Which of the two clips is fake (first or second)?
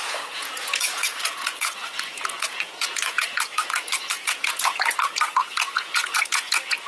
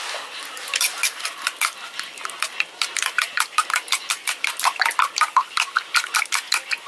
first